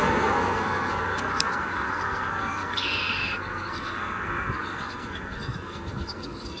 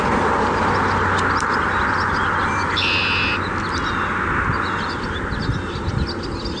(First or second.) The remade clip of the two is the first